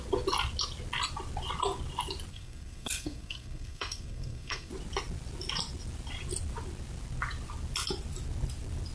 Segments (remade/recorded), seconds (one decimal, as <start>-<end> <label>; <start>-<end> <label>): 0.0-2.3 recorded; 2.3-4.7 remade; 4.7-8.9 recorded